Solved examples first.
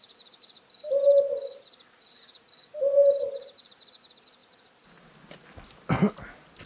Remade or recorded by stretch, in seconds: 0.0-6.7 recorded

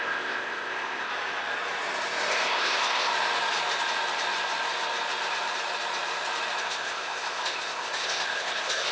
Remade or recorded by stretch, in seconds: 0.0-1.1 remade; 1.1-2.3 recorded; 2.3-3.1 remade; 3.1-6.6 recorded; 6.6-8.9 remade

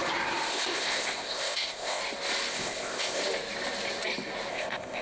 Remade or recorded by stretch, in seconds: 0.0-0.5 recorded; 0.5-2.0 remade; 2.0-2.5 recorded; 2.5-3.2 remade; 3.2-4.5 recorded; 4.5-5.0 remade

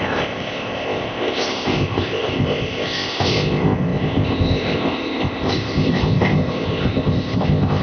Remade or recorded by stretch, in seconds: 0.0-7.8 remade